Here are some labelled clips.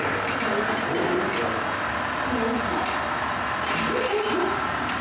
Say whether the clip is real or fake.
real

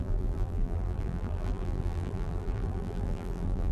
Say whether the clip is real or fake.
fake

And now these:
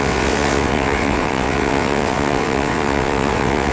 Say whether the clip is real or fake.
fake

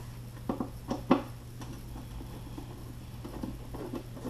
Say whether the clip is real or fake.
real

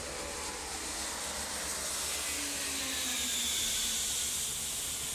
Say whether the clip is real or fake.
real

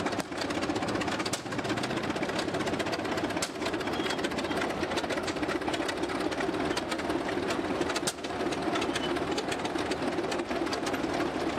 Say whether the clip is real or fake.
real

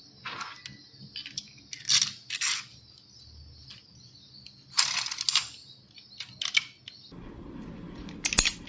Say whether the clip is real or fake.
real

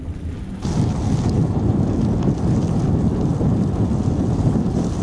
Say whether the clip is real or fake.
real